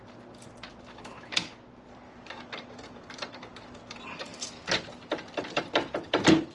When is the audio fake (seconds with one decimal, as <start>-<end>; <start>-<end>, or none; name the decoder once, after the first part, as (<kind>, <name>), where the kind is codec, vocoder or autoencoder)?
0.0-4.3 (vocoder, BigVGAN v2); 4.9-6.5